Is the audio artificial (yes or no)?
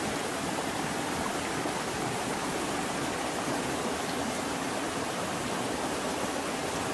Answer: no